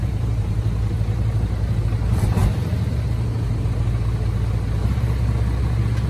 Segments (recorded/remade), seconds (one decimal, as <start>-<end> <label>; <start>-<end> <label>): 0.0-2.4 remade; 2.4-6.1 recorded